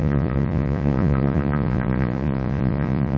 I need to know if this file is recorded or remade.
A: remade